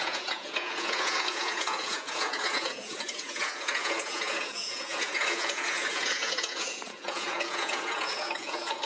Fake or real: fake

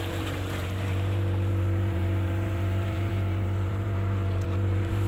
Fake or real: fake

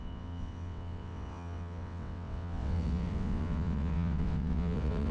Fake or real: fake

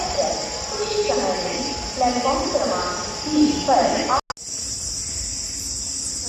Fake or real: real